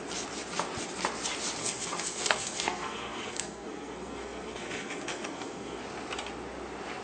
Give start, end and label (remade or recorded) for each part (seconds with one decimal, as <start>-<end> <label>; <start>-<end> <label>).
0.0-1.6 recorded; 1.6-5.8 remade; 5.8-7.0 recorded